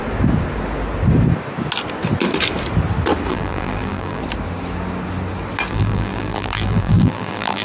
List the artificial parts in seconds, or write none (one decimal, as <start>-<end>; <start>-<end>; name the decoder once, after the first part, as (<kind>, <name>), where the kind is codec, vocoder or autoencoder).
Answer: 3.3-4.2 (vocoder, BigVGAN v2); 5.7-7.6